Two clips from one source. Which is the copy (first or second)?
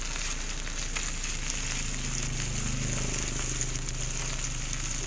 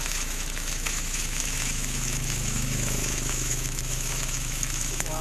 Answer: second